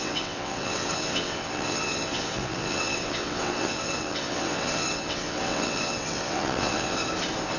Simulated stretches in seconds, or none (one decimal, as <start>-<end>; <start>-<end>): 0.0-7.0